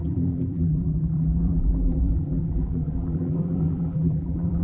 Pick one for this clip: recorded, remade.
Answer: remade